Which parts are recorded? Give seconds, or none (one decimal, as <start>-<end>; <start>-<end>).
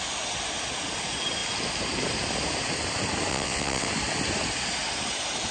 0.0-3.3; 3.9-5.5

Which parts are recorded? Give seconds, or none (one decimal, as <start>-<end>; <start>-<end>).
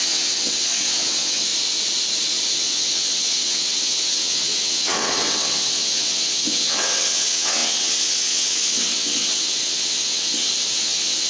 1.5-2.5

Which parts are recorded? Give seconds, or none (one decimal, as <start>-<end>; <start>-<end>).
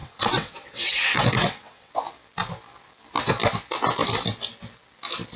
1.9-5.4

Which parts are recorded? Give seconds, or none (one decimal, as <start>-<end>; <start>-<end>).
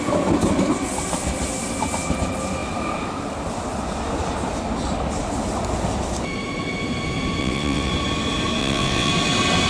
0.0-7.4; 7.9-8.6; 9.1-9.7